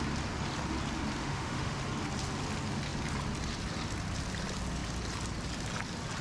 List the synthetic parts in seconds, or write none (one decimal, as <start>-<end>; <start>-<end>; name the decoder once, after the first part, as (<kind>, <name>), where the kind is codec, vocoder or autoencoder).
1.2-1.8 (autoencoder, DAC-VAE)